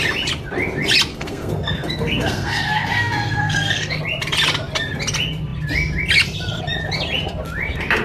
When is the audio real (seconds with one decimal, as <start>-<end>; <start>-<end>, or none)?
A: 0.0-1.1; 4.0-8.0